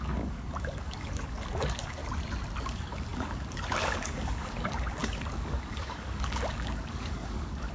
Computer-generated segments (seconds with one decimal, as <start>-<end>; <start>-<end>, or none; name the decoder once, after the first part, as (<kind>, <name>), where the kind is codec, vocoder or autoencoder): 0.0-2.0 (codec, DAC); 2.6-7.7